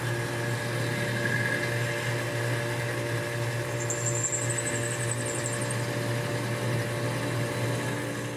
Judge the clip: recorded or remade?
recorded